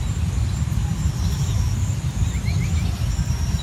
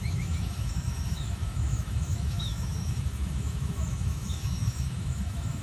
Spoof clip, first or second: second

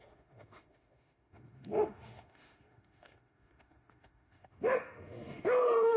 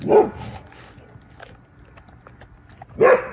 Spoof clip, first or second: first